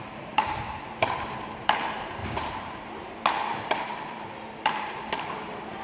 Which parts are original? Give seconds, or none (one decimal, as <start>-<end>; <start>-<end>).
none